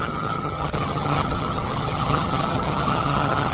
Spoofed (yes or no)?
yes